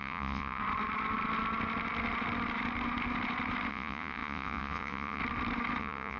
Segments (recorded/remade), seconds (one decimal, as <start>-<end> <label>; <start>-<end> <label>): 0.0-0.6 remade; 0.6-3.7 recorded; 3.7-5.2 remade; 5.2-5.8 recorded; 5.8-6.2 remade